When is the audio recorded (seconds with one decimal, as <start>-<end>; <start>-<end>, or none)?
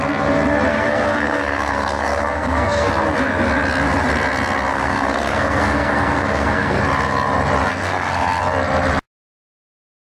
0.0-0.7; 2.9-4.7; 6.8-7.7; 8.4-10.0